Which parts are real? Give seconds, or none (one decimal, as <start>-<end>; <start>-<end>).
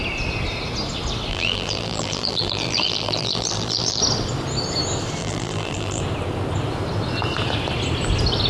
0.0-1.3; 4.0-5.2; 6.0-8.5